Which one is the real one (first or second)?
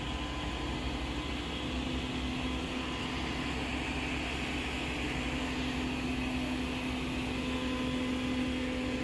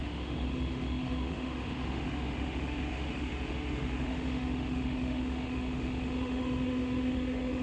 first